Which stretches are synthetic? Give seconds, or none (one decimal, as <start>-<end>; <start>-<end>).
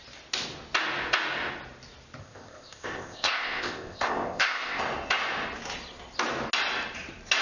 2.2-4.8